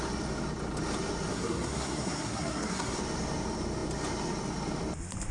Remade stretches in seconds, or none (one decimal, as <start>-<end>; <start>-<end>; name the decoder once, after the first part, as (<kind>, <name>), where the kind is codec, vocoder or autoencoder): 1.3-3.0 (codec, SNAC)